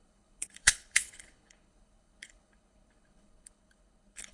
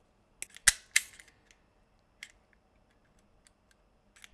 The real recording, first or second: second